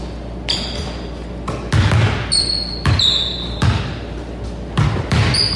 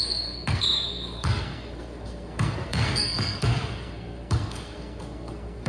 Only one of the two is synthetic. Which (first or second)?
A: second